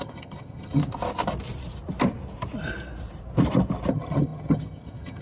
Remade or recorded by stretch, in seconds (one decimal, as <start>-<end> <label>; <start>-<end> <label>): 0.0-0.8 remade; 0.8-3.9 recorded; 3.9-5.2 remade